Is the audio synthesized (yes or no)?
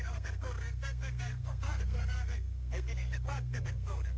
yes